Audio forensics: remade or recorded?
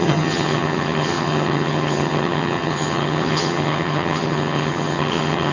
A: remade